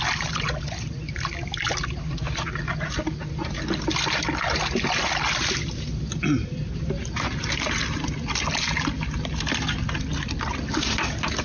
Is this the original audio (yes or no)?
yes